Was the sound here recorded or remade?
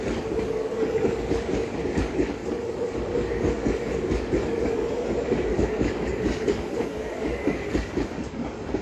remade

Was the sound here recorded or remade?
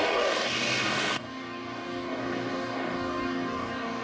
remade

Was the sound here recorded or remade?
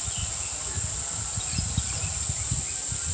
recorded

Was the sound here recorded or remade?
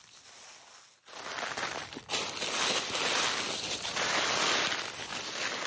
recorded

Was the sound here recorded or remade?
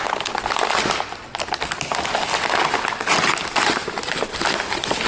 recorded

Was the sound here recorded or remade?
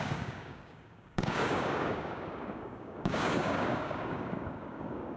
remade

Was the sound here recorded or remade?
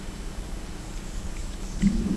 remade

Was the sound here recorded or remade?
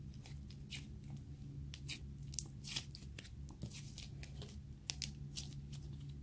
recorded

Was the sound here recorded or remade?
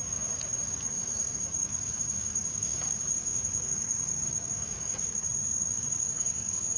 remade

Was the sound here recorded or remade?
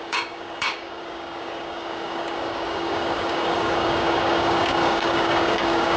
remade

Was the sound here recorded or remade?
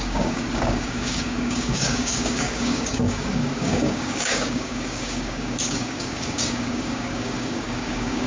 remade